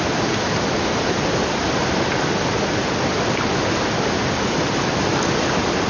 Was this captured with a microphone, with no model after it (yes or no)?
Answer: yes